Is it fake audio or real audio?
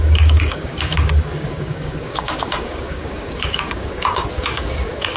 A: fake